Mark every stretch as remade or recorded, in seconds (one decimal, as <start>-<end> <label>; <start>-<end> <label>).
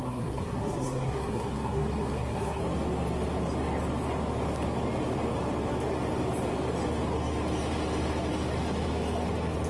0.0-2.6 remade; 2.6-9.7 recorded